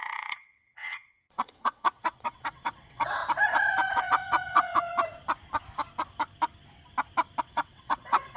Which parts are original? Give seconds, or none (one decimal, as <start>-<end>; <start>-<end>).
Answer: 3.2-4.0; 4.9-7.4